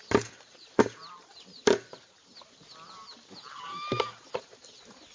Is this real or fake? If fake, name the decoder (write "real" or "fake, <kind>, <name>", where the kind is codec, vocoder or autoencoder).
real